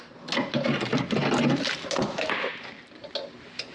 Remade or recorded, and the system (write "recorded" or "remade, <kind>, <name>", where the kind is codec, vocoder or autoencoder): recorded